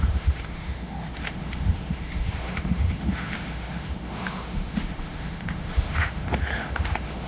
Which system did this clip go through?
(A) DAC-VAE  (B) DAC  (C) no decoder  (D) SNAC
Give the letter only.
A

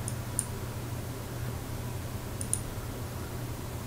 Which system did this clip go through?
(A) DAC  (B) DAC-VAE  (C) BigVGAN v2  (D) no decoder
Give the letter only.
D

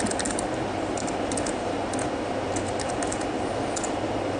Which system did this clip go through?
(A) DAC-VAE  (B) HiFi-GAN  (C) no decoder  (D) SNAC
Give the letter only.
C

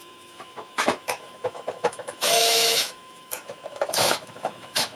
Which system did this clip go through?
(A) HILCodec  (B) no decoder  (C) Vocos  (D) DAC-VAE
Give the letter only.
D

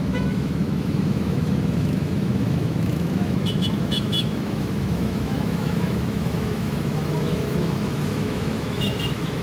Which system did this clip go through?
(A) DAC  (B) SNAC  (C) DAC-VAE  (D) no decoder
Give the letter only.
C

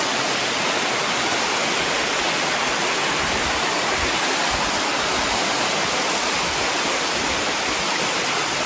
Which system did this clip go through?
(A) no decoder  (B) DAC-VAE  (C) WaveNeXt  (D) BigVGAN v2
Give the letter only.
A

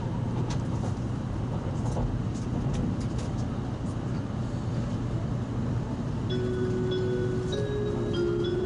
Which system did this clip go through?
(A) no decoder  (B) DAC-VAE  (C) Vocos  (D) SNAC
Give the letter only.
A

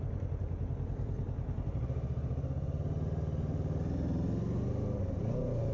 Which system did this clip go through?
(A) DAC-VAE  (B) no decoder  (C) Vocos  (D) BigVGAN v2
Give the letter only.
B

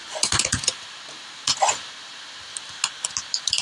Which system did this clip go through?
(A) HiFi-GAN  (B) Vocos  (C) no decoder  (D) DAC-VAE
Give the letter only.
C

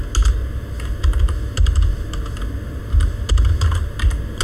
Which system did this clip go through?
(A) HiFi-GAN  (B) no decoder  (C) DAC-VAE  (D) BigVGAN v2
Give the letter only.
B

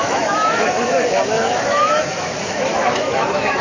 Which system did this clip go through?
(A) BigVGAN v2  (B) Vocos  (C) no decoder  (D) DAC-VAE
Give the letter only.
D